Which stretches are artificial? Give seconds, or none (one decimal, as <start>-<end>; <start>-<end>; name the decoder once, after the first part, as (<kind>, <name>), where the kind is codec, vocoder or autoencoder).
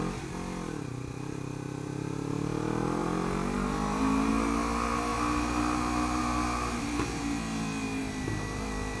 none